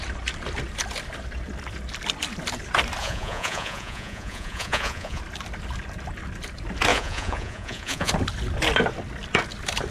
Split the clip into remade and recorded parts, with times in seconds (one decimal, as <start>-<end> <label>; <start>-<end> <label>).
0.0-3.0 recorded; 3.0-5.2 remade; 5.2-6.9 recorded; 6.9-8.1 remade; 8.1-9.9 recorded